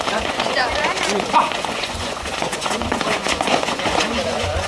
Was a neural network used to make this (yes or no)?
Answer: yes